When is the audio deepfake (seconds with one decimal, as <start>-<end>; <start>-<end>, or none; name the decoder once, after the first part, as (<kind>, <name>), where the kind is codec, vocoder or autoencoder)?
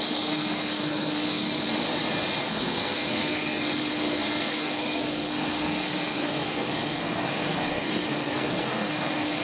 0.0-1.7 (codec, SNAC); 2.4-9.4